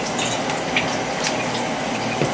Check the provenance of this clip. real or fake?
real